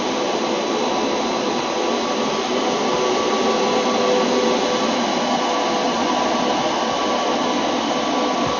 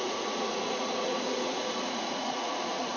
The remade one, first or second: second